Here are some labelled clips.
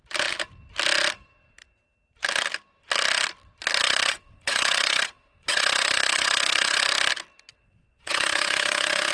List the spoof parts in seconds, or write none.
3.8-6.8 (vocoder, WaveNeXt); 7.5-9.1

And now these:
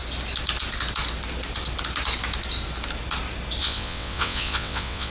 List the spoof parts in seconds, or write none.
3.6-5.1 (vocoder, WaveNeXt)

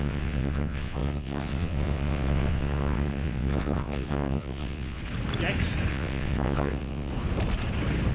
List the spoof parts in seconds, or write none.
0.0-5.0 (vocoder, WaveNeXt); 5.9-7.1

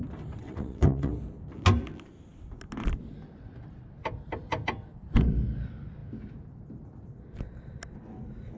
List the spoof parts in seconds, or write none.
0.4-1.1 (vocoder, WaveNeXt)

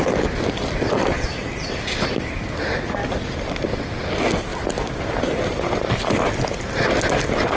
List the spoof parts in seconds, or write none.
none

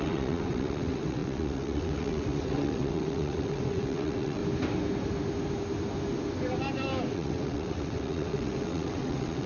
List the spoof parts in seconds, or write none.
0.0-4.4 (vocoder, WaveNeXt); 7.1-9.5